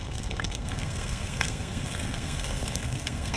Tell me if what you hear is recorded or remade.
remade